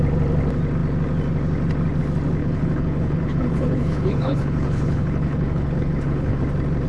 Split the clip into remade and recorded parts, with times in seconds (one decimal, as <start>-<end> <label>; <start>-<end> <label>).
0.0-2.4 recorded; 2.4-6.4 remade; 6.4-6.9 recorded